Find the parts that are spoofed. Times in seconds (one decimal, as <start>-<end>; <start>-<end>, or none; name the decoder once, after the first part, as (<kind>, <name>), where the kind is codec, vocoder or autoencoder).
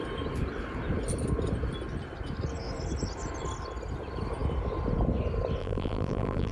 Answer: 5.6-6.5 (vocoder, BigVGAN v2)